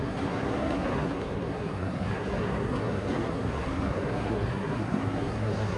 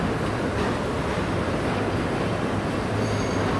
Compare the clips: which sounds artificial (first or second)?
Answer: first